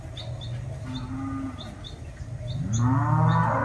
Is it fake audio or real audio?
real